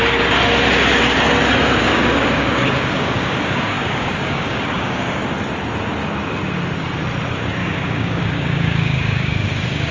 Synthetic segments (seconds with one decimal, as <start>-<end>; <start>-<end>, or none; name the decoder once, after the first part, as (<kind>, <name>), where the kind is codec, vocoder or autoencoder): 1.8-5.2 (codec, DAC); 7.6-9.9